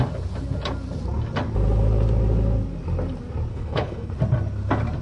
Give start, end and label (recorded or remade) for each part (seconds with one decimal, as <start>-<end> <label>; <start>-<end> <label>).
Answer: 0.0-3.5 recorded; 3.5-4.1 remade; 4.1-5.0 recorded